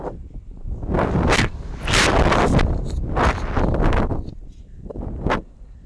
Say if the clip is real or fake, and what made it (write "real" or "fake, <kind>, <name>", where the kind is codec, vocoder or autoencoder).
real